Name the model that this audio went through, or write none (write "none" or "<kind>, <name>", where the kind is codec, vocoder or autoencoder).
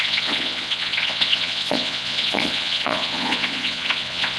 vocoder, Vocos